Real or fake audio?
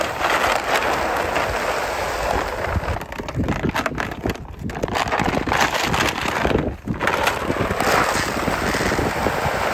real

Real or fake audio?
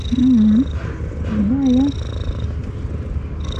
real